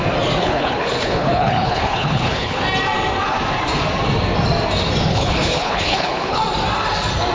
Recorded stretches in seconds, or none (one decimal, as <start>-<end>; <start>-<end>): 0.0-0.4; 2.6-5.1; 6.4-7.3